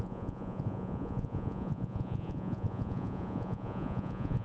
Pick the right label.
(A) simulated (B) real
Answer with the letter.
A